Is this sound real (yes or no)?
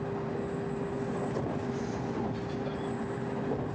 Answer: yes